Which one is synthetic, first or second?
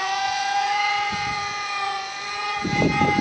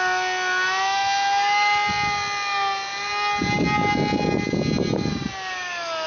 first